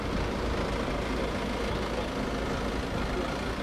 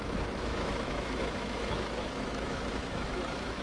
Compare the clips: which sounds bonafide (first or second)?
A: first